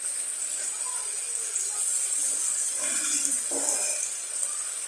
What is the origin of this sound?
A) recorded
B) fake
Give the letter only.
A